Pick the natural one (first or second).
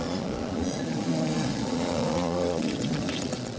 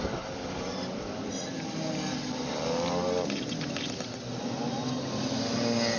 second